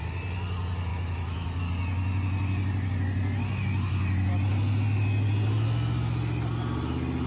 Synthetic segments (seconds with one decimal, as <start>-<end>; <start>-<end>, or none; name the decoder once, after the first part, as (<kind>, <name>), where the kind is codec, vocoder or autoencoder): 0.9-1.6 (autoencoder, DAC-VAE)